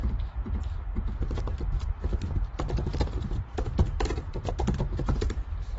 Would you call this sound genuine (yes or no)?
yes